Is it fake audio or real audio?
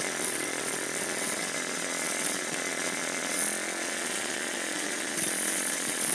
fake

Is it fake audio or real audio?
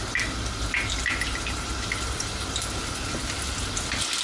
real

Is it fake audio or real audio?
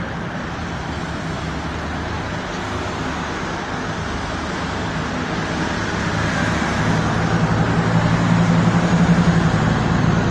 real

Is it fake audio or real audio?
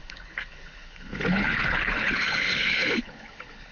fake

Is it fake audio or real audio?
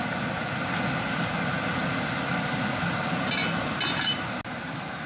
real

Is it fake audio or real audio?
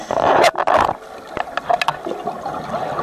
real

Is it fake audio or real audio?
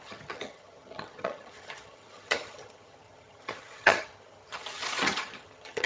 fake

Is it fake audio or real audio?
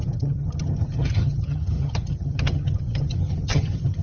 fake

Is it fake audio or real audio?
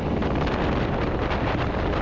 real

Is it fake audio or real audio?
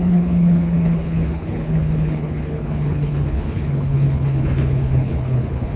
fake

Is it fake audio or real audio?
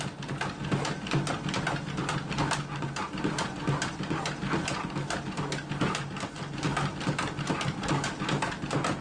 real